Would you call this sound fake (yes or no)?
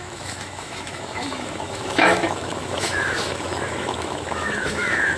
yes